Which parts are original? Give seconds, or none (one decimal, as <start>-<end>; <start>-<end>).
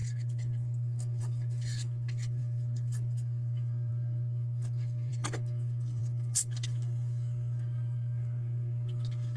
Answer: none